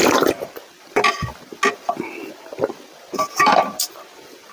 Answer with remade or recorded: recorded